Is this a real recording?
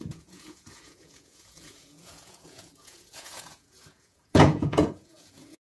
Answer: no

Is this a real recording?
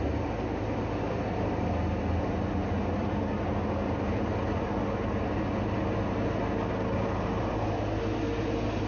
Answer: yes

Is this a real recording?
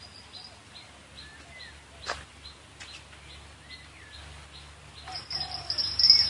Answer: yes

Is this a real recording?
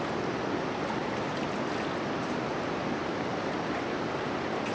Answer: yes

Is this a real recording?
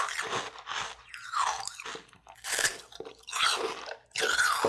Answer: yes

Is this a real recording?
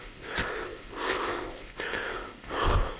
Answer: no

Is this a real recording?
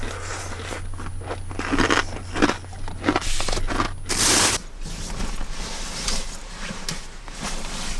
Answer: yes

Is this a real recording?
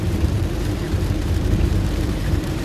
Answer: no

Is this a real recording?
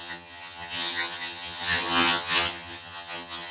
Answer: no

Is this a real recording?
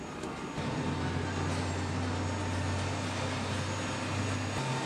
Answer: yes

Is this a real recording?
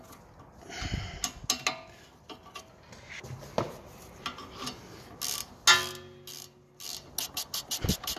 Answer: yes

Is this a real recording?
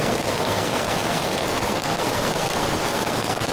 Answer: no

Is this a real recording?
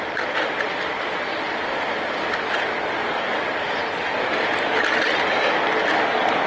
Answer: yes